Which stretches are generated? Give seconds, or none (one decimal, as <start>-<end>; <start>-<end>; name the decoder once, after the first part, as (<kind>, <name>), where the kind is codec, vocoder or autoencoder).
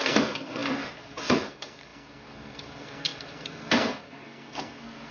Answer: 0.0-5.1 (codec, SNAC)